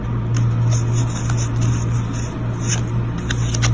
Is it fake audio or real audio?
real